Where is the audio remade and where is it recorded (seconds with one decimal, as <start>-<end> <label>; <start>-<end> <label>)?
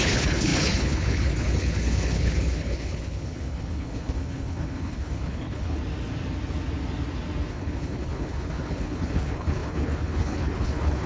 0.0-5.8 remade; 5.8-7.5 recorded; 7.5-11.1 remade